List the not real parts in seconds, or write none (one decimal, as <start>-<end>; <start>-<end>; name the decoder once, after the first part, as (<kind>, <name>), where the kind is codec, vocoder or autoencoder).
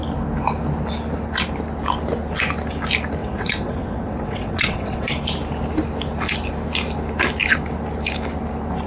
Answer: 3.2-5.1 (vocoder, WaveNeXt)